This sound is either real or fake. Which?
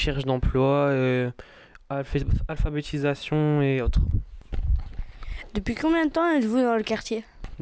real